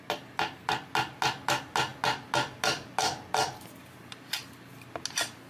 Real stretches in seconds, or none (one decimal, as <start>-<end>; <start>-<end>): 0.0-5.5